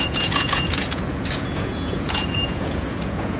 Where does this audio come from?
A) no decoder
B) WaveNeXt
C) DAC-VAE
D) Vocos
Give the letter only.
D